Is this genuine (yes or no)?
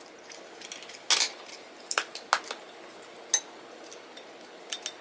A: yes